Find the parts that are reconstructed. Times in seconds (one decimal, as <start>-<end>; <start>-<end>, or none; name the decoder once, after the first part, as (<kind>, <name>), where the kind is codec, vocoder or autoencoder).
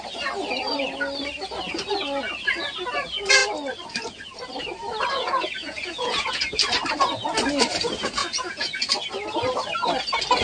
5.6-6.4 (vocoder, Vocos); 8.2-8.9